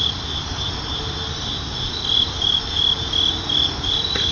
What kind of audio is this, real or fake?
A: fake